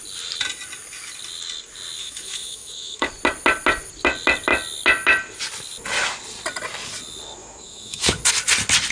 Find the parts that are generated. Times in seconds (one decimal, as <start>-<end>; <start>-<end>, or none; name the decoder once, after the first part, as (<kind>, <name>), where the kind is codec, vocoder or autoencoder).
2.0-3.1 (autoencoder, DAC-VAE); 7.4-8.2